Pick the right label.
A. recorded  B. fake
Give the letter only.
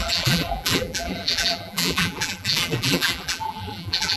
B